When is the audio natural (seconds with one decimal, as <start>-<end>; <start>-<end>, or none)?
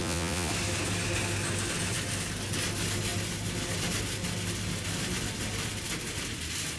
0.5-6.8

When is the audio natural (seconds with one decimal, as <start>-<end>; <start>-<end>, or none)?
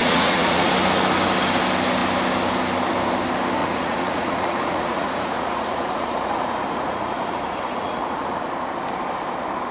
0.7-3.6; 8.4-9.7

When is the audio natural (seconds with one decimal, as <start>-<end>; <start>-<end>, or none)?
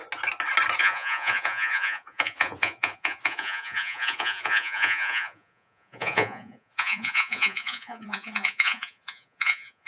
0.0-0.8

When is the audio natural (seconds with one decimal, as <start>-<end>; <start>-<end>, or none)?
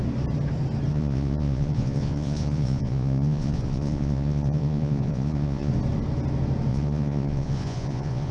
0.0-0.9; 5.7-6.7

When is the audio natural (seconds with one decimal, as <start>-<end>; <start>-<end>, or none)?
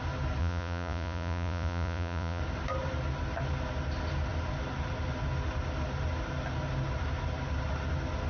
0.0-0.4; 2.4-8.3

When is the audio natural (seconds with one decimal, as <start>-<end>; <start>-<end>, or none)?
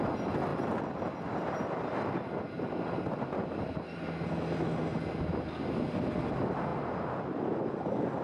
0.0-8.2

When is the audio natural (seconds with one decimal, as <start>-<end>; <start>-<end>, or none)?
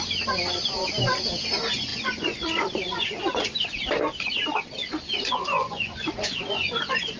0.0-1.9; 3.3-4.8